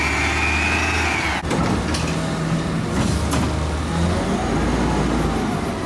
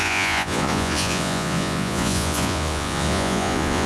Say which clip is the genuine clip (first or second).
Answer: first